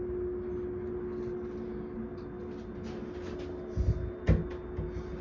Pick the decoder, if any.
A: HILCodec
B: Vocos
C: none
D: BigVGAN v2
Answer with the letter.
C